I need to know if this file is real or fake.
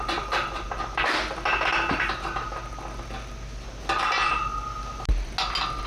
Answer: real